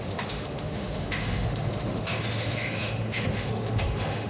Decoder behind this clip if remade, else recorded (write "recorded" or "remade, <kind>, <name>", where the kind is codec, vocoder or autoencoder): remade, autoencoder, DAC-VAE